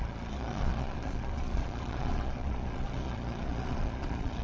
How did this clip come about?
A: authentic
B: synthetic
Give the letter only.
B